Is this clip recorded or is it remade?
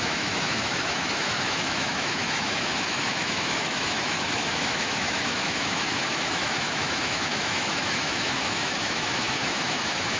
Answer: remade